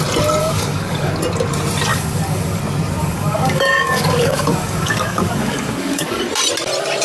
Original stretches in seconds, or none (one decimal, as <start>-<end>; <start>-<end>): 0.0-0.4; 1.1-1.9; 2.6-3.0; 6.2-7.0